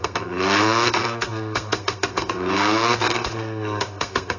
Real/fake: fake